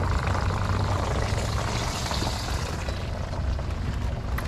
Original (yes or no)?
yes